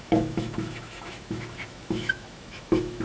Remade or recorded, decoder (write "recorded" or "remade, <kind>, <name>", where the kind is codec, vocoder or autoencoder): remade, autoencoder, DAC-VAE